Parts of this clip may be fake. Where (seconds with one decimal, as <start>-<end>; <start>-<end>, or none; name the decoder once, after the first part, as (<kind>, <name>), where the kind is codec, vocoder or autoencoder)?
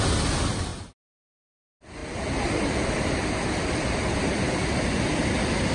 2.0-4.6 (vocoder, BigVGAN v2)